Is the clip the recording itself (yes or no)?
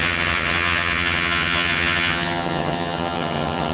no